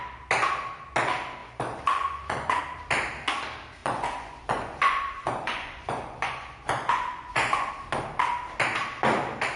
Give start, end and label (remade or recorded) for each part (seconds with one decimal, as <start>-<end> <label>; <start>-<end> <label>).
0.0-1.4 recorded; 1.4-2.6 remade; 2.6-3.8 recorded; 3.8-7.7 remade; 7.7-9.6 recorded